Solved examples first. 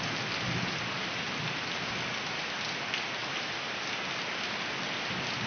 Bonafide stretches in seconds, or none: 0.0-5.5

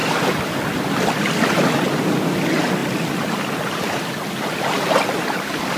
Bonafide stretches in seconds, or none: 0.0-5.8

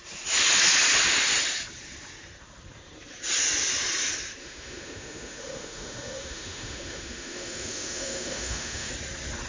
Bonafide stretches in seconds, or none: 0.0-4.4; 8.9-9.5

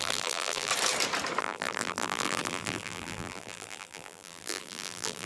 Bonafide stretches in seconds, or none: 0.7-1.4